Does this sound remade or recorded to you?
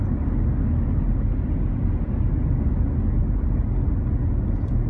recorded